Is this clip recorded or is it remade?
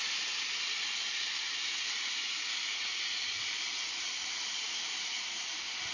remade